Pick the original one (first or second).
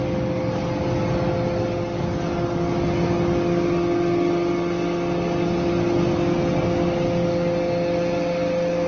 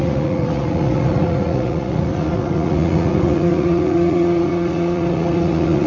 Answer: first